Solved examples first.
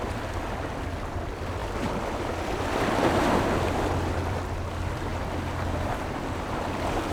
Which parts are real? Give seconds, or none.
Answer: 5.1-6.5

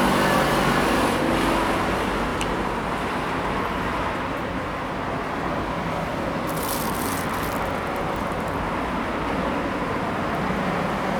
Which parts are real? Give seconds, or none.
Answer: 0.0-11.2

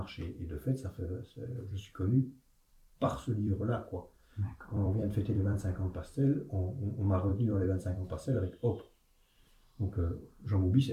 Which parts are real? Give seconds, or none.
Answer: 0.0-1.4; 5.6-7.3; 8.8-10.9